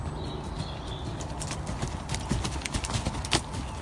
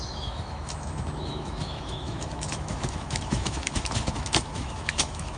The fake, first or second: second